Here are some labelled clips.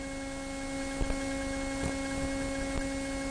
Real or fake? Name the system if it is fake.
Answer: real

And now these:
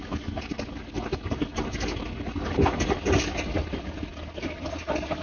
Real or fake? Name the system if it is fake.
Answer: real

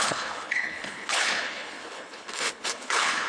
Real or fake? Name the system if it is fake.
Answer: fake, codec, HILCodec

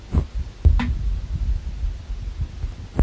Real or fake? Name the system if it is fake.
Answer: real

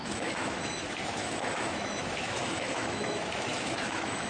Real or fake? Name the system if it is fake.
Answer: fake, autoencoder, DAC-VAE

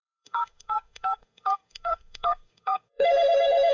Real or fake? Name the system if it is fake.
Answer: fake, codec, SNAC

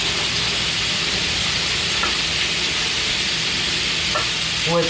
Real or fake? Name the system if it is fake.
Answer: real